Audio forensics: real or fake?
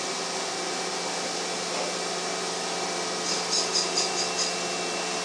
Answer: real